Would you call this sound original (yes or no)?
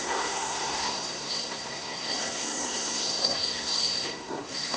no